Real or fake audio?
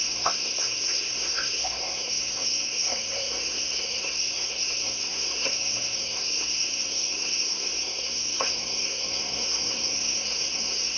fake